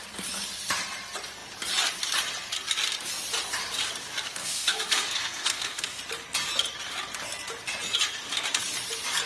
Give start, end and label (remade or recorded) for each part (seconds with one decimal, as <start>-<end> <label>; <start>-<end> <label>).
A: 0.0-4.4 recorded; 4.4-6.0 remade; 6.0-9.3 recorded